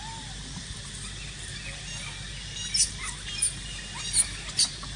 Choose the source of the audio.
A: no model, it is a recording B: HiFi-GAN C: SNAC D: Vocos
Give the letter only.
A